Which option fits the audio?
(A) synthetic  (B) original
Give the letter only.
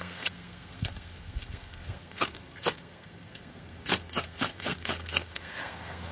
A